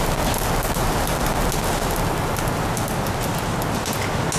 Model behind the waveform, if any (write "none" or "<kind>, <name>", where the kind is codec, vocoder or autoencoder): none